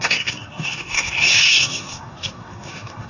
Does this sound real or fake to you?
fake